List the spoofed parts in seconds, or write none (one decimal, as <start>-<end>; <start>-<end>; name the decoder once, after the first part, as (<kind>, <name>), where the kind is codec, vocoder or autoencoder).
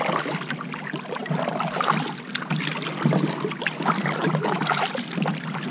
none